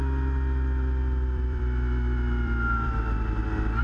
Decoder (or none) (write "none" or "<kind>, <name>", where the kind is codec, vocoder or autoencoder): vocoder, BigVGAN v2